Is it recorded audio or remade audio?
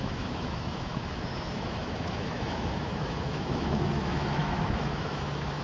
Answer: remade